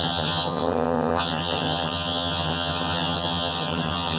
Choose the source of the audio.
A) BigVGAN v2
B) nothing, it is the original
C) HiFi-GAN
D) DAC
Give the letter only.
C